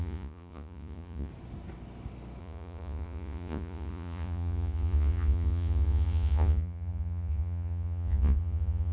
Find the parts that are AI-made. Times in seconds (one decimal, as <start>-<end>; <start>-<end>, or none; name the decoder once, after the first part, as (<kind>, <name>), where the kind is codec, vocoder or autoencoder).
0.0-1.3 (vocoder, Vocos); 2.4-8.9